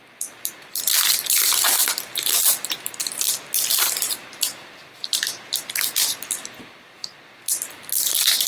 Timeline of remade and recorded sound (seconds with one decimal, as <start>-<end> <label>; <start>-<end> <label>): 0.0-3.0 remade; 3.0-4.1 recorded; 4.1-8.5 remade